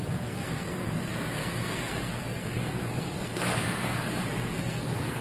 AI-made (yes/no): yes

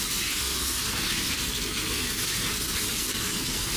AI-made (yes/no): yes